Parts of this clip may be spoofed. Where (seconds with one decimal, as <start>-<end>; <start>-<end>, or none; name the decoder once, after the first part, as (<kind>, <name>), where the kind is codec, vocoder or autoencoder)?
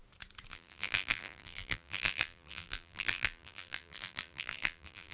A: 0.5-5.1 (vocoder, BigVGAN v2)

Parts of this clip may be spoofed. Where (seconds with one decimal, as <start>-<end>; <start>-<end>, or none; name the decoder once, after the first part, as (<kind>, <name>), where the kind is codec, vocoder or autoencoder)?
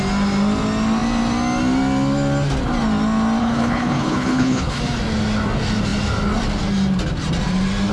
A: 3.4-4.8 (codec, HILCodec)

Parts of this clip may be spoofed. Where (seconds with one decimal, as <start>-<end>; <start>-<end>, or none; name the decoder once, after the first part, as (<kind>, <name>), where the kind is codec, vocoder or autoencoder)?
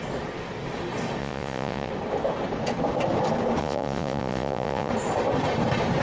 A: 1.2-1.9 (vocoder, Vocos); 3.6-4.9